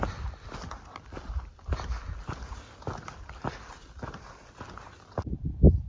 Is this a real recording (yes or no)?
yes